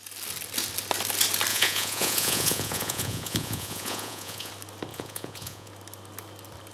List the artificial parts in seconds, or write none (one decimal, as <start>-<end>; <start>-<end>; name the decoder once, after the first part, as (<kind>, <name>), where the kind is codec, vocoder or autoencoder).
1.5-4.5 (vocoder, Vocos); 4.9-5.7